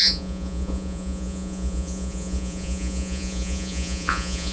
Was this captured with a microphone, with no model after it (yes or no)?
no